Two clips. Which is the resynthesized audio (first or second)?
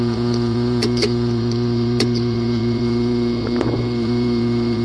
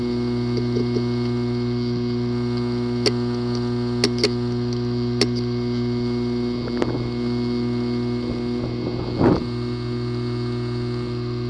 first